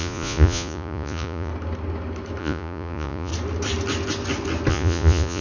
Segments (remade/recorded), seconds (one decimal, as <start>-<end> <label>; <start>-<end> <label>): 0.0-1.5 remade; 1.5-2.4 recorded; 2.4-3.3 remade; 3.3-4.7 recorded; 4.7-5.4 remade